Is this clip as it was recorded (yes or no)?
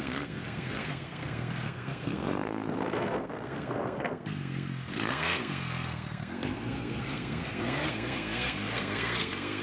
no